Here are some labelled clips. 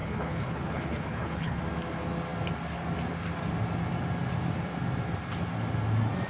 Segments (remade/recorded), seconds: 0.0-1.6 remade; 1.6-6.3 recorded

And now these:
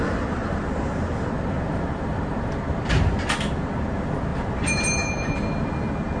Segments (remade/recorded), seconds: 0.0-0.4 recorded; 0.4-2.5 remade; 2.5-4.3 recorded; 4.3-5.7 remade; 5.7-6.2 recorded

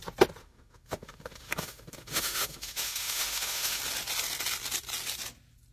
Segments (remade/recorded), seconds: 0.0-0.4 recorded; 0.4-3.8 remade; 3.8-5.7 recorded

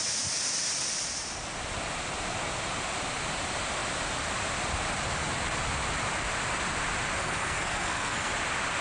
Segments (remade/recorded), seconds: 0.0-7.2 recorded; 7.2-8.3 remade; 8.3-8.8 recorded

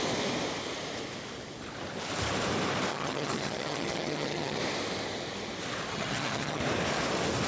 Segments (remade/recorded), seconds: 0.0-2.9 recorded; 2.9-4.6 remade; 4.6-5.9 recorded; 5.9-6.6 remade; 6.6-7.5 recorded

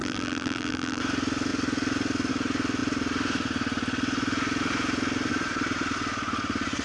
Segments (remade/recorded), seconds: 0.0-1.0 remade; 1.0-6.8 recorded